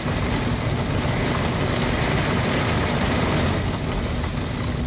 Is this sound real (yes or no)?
yes